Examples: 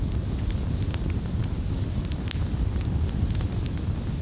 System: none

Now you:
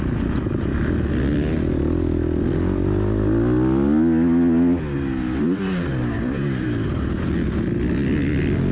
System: none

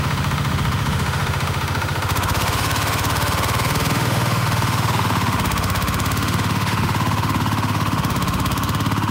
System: autoencoder, DAC-VAE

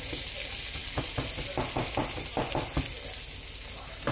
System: none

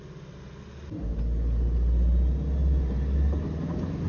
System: none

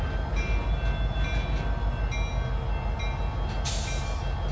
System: none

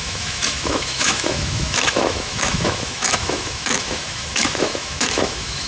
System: autoencoder, DAC-VAE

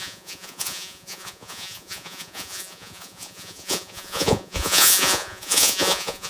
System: vocoder, Vocos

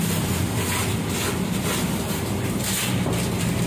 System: none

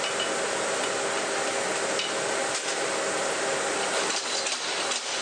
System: none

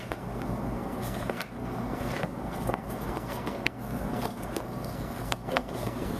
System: codec, SNAC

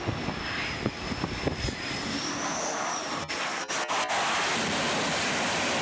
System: none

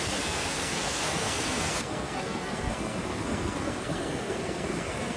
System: codec, SNAC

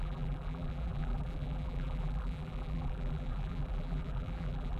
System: vocoder, BigVGAN v2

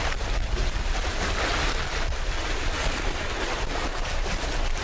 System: vocoder, BigVGAN v2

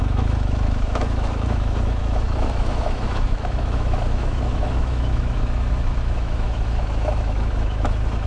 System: autoencoder, DAC-VAE